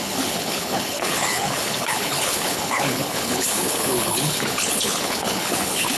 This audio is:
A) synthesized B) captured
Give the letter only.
A